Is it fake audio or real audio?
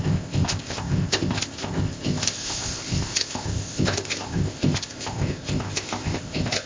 fake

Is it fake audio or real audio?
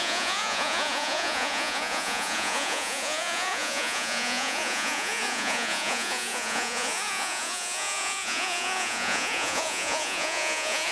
fake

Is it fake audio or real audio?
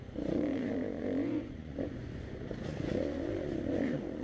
fake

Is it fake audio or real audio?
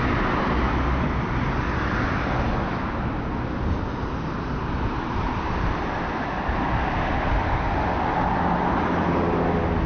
real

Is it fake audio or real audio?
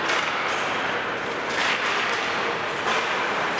real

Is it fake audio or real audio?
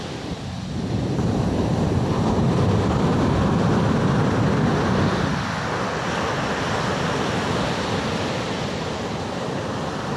fake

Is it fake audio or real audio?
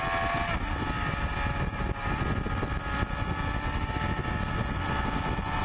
real